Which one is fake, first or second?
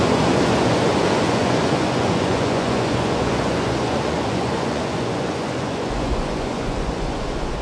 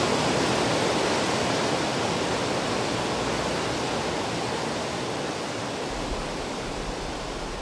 first